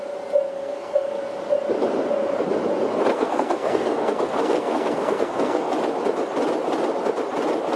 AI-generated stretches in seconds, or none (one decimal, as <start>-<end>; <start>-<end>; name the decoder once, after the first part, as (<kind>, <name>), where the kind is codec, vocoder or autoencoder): 0.5-1.2 (codec, SNAC); 3.1-5.7